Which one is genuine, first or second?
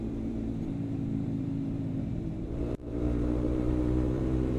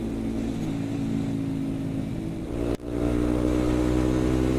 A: second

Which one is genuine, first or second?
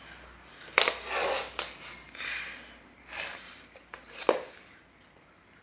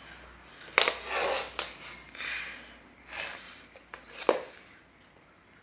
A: second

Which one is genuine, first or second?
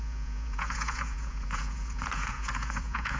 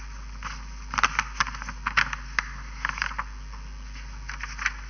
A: second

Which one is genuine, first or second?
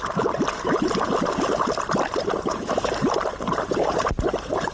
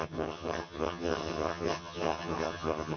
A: first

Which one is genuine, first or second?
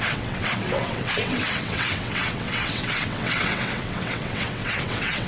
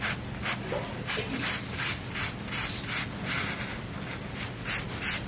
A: second